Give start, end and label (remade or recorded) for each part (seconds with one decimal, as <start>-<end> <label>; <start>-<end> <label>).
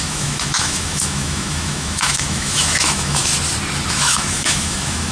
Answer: 0.0-3.3 remade; 3.3-3.9 recorded; 3.9-5.1 remade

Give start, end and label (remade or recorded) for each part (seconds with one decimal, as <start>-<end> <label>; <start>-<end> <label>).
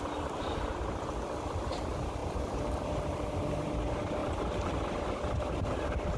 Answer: 0.0-4.2 recorded; 4.2-5.4 remade; 5.4-6.2 recorded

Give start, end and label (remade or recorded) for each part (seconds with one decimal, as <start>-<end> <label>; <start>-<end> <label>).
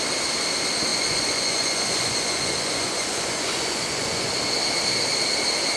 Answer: 0.0-0.9 recorded; 0.9-4.4 remade; 4.4-5.8 recorded